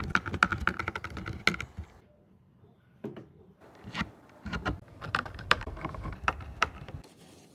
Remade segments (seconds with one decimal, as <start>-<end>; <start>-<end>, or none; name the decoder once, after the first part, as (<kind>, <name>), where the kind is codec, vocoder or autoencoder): 2.7-7.5 (vocoder, BigVGAN v2)